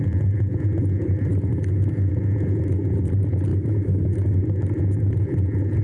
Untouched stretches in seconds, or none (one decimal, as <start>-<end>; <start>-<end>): 0.0-1.5; 2.1-3.5; 4.4-5.8